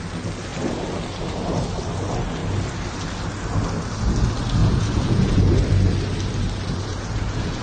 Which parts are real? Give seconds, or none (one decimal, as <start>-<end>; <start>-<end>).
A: 0.0-4.6; 5.5-6.9